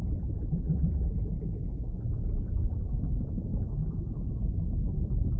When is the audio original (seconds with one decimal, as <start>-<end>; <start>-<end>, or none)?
0.0-5.4